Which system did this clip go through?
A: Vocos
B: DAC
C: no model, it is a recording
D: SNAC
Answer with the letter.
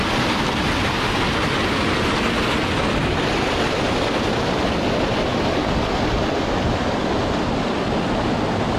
C